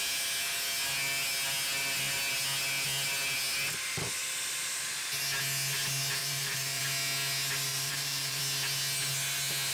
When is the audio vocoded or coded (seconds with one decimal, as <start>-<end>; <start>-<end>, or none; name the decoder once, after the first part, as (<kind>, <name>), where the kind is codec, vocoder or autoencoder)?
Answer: 6.2-6.8 (vocoder, BigVGAN v2); 7.7-8.4